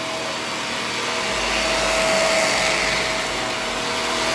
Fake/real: real